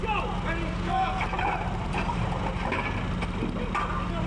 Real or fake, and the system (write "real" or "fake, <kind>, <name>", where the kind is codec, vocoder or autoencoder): real